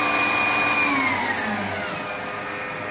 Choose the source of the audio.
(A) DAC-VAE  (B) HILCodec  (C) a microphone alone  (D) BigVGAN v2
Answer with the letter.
C